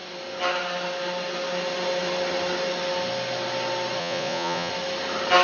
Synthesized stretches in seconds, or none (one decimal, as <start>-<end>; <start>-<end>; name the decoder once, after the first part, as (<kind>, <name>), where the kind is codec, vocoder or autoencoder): 4.0-4.7 (vocoder, Vocos)